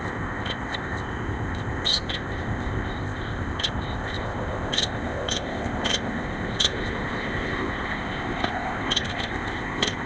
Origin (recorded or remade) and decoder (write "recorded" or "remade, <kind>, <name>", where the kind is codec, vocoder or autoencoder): remade, codec, ZipCodec